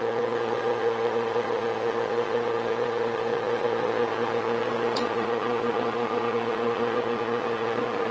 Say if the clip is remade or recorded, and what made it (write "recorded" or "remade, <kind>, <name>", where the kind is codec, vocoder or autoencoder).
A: remade, vocoder, Vocos